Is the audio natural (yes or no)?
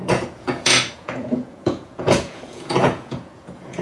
no